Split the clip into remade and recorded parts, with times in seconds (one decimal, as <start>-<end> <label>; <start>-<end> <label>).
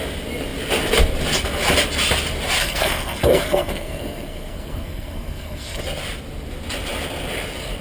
0.0-2.6 recorded; 2.6-5.8 remade; 5.8-7.8 recorded